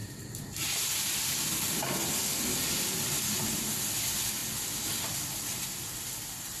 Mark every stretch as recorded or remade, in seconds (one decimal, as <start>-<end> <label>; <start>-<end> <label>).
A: 0.0-4.0 remade; 4.0-6.6 recorded